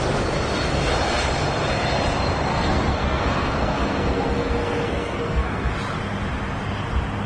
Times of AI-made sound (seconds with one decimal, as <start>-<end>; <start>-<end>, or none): 2.5-5.7